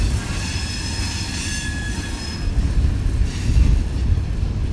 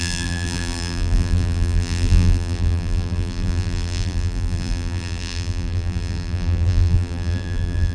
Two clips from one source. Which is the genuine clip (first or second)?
first